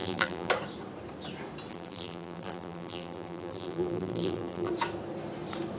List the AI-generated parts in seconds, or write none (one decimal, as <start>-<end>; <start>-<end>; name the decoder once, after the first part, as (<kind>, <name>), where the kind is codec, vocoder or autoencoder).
0.0-0.5 (vocoder, BigVGAN v2); 1.7-4.7